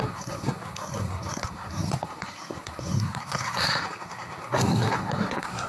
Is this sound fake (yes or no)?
yes